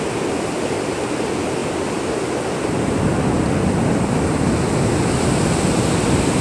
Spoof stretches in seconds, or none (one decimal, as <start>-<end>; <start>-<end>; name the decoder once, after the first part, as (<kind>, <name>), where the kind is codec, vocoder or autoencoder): none